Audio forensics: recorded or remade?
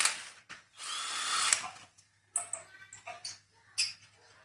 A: recorded